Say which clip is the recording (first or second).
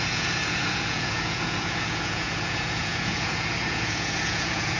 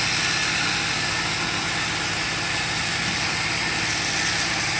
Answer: second